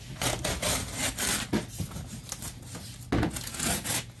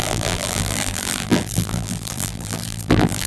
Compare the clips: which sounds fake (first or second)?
second